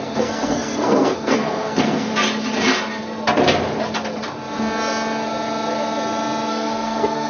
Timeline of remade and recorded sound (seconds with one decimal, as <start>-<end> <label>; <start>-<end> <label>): 0.0-2.1 remade; 2.1-6.5 recorded; 6.5-7.3 remade